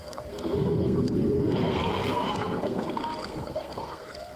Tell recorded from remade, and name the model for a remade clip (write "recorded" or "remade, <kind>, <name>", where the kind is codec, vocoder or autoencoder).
remade, codec, SNAC